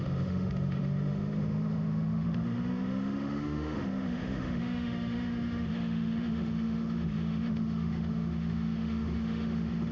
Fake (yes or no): yes